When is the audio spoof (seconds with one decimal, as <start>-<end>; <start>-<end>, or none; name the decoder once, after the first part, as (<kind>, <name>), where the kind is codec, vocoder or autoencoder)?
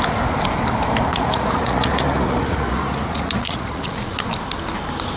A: 1.1-4.2 (vocoder, Vocos)